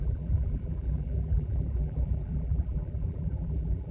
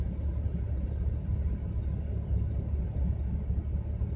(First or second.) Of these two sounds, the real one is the second